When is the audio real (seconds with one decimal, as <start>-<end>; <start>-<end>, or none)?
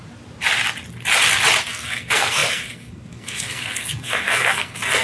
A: 0.0-1.7